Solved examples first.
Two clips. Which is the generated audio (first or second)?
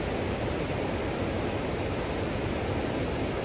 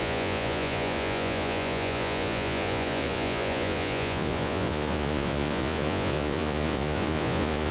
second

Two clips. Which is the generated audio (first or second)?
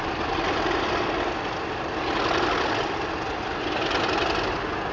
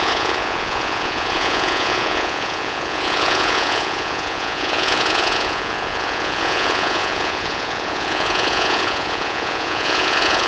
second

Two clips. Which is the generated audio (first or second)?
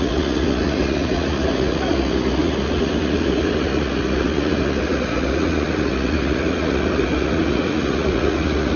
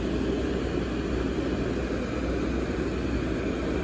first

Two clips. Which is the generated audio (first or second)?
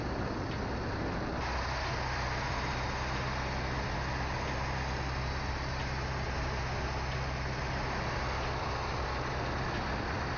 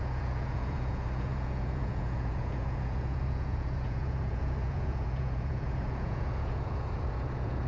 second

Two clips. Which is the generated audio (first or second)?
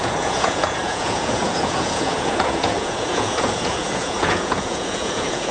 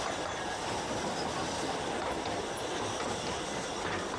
first